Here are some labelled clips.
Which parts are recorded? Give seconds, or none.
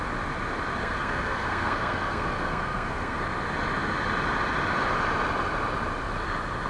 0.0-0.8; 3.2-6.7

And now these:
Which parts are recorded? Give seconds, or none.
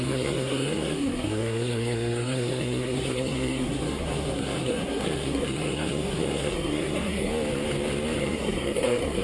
7.3-8.2